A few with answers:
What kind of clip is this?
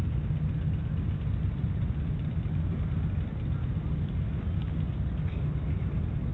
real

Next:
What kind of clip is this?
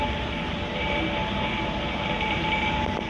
real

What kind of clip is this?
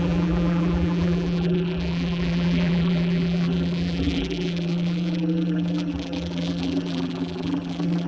fake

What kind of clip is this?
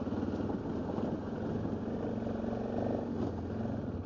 real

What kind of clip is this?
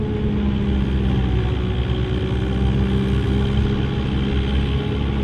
real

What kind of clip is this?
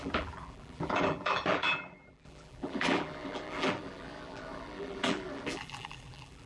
fake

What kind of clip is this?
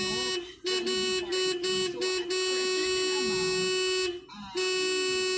real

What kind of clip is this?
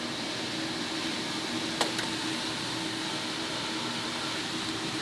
real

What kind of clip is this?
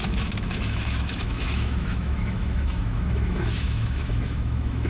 fake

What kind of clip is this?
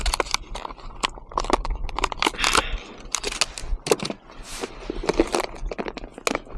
real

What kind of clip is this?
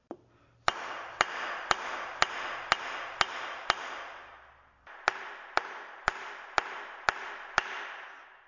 real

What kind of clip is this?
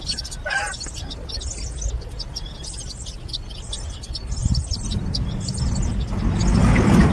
real